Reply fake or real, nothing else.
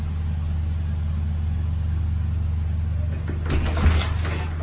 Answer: real